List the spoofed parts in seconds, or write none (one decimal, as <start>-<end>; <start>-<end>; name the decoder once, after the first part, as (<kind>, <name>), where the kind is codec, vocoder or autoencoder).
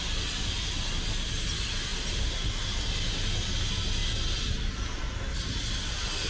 none